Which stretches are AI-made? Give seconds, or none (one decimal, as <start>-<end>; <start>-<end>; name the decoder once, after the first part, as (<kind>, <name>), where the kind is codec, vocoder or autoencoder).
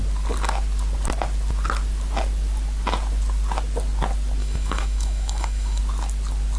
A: 4.4-5.8 (autoencoder, DAC-VAE)